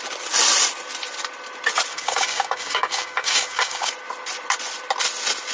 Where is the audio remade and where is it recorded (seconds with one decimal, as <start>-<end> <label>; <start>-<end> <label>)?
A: 0.0-1.9 recorded; 1.9-3.9 remade; 3.9-5.5 recorded